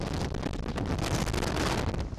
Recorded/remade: recorded